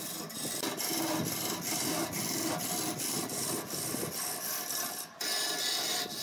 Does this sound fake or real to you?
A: real